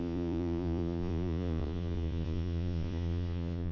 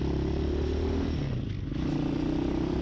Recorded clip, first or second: second